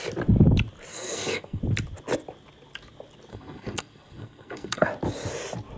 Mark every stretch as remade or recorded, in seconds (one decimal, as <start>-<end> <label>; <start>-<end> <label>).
0.0-0.9 recorded; 0.9-1.6 remade; 1.6-3.3 recorded; 3.3-4.9 remade; 4.9-5.8 recorded